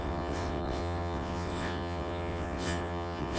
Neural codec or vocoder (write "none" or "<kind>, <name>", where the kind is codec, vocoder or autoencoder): vocoder, WaveNeXt